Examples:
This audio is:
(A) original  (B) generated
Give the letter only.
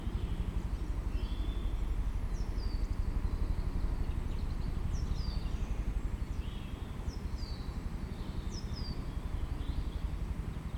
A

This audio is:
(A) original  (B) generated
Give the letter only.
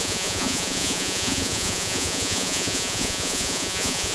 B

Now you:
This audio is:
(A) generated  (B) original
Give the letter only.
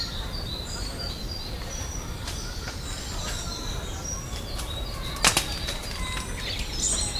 B